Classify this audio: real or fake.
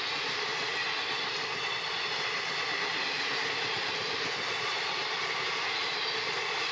real